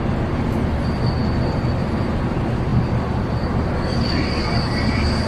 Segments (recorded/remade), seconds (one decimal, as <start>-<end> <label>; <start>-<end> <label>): 0.0-1.2 recorded; 1.2-2.1 remade; 2.1-2.7 recorded; 2.7-5.3 remade